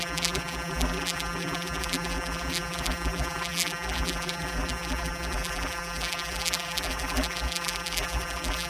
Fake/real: fake